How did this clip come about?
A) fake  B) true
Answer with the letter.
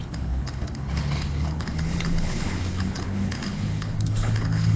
A